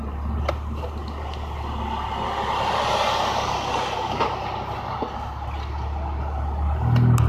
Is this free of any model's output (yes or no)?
yes